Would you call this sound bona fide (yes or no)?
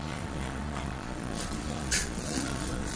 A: no